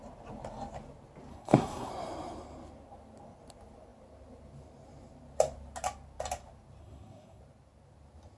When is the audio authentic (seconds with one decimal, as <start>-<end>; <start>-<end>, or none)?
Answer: 0.0-1.3; 1.9-6.8; 7.4-8.4